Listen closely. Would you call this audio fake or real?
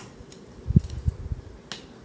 real